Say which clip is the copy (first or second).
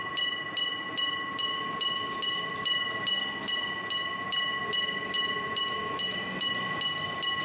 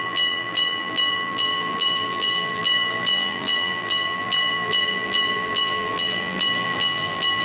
second